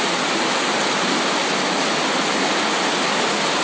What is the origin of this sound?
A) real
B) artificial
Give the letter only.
A